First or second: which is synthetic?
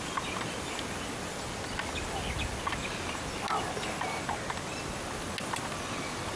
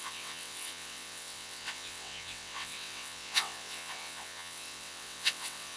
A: second